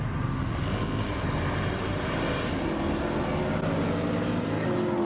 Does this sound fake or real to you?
real